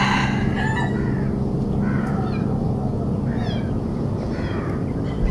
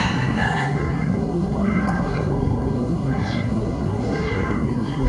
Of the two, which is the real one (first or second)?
first